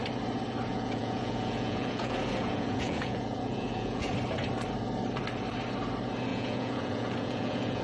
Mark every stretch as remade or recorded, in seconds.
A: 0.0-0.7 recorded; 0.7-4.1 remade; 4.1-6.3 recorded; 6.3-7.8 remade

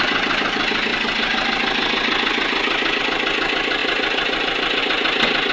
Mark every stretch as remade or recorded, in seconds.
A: 0.0-5.5 recorded

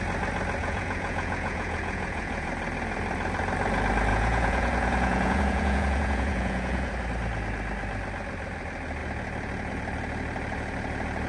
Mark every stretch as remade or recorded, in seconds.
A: 0.0-0.6 recorded; 0.6-2.5 remade; 2.5-4.1 recorded; 4.1-6.9 remade; 6.9-11.3 recorded

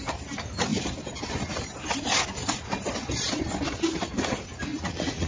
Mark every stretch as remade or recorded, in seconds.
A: 0.0-4.7 recorded; 4.7-5.3 remade

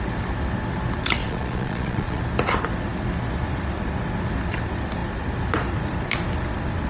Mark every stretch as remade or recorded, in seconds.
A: 0.0-1.2 recorded; 1.2-2.2 remade; 2.2-6.9 recorded

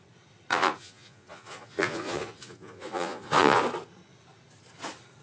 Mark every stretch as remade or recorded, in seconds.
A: 0.0-0.5 recorded; 0.5-3.6 remade; 3.6-5.2 recorded